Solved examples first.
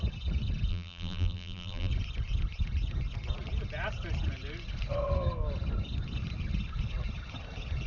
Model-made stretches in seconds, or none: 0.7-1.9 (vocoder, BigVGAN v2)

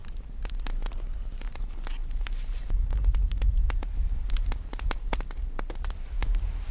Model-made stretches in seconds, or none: 0.0-1.6 (vocoder, BigVGAN v2); 2.0-5.2

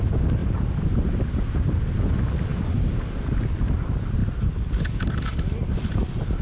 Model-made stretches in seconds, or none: 0.4-0.9 (vocoder, BigVGAN v2); 2.5-3.3; 4.2-4.8

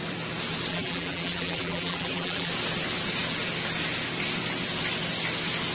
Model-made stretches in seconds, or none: 0.7-2.5 (vocoder, BigVGAN v2)

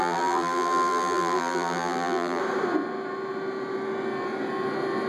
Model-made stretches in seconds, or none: 0.0-2.4 (vocoder, BigVGAN v2)

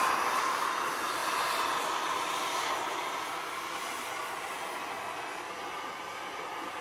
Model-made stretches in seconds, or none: none

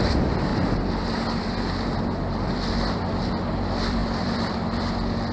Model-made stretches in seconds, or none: 0.0-0.5 (vocoder, BigVGAN v2); 2.9-5.3